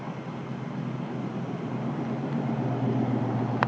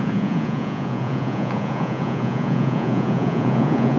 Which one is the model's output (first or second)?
second